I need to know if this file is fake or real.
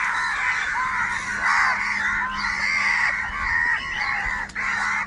real